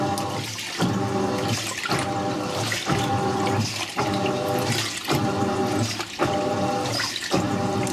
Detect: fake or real real